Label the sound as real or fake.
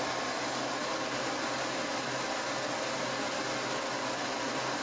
real